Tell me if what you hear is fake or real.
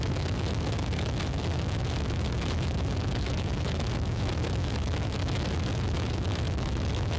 fake